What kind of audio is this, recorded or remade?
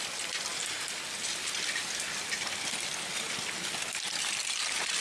recorded